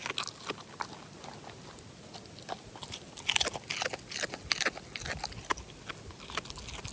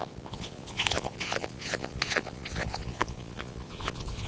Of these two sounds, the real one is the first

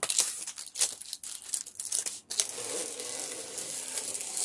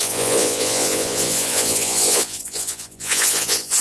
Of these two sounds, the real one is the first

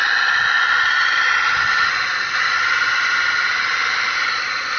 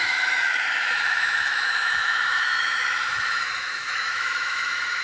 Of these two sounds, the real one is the first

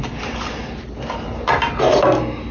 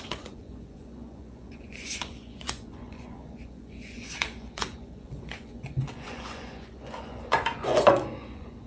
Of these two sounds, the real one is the first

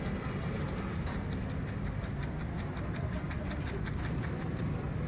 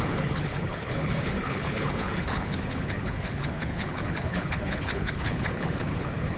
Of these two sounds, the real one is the first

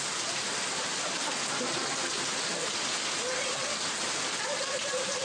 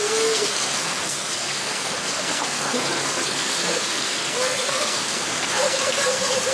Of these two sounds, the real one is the first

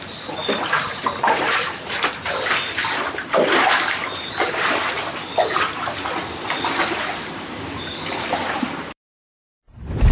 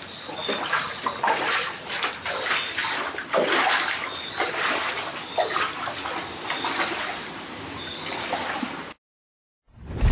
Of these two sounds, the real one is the second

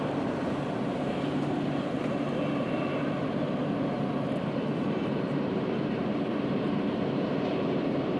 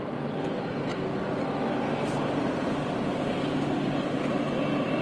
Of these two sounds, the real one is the second